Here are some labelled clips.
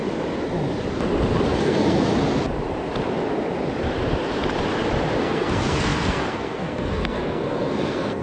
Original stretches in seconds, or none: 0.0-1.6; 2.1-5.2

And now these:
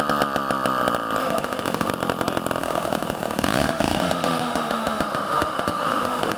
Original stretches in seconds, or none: 0.0-1.2; 1.9-2.6